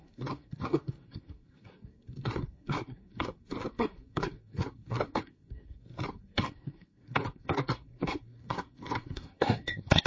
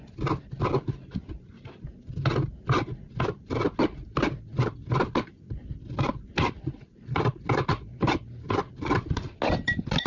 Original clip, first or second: second